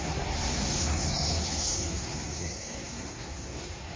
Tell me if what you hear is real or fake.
fake